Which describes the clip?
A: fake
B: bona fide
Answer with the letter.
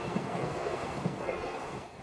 A